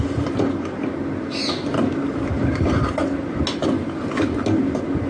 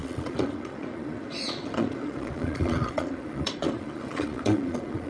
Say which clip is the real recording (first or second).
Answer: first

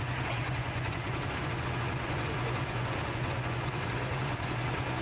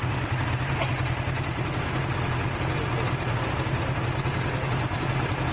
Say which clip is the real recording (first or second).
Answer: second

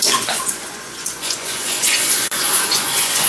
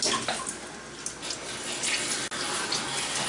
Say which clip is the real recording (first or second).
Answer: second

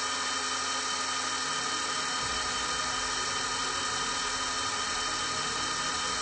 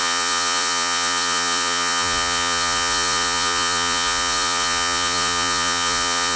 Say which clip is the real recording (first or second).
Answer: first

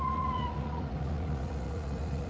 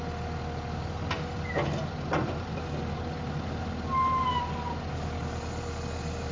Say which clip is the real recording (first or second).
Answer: second